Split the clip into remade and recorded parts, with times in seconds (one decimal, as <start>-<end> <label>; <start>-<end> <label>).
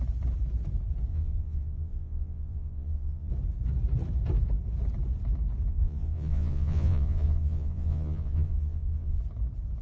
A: 0.0-1.1 recorded; 1.1-3.3 remade; 3.3-5.7 recorded; 5.7-9.2 remade; 9.2-9.8 recorded